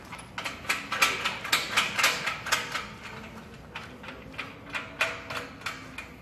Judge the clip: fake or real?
real